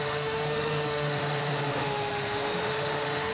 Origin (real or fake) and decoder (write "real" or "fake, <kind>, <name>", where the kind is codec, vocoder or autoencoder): fake, autoencoder, DAC-VAE